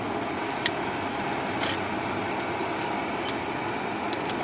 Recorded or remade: recorded